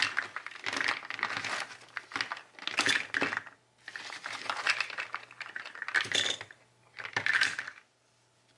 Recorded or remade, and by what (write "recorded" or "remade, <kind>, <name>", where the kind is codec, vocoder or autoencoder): recorded